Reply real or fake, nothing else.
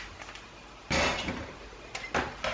real